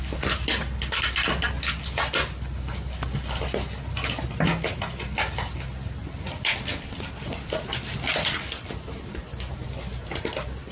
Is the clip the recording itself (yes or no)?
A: yes